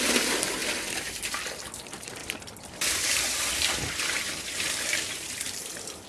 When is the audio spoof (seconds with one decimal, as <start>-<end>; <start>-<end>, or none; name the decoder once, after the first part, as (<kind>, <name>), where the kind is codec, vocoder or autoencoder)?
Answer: 0.0-0.6 (vocoder, BigVGAN v2); 1.1-6.1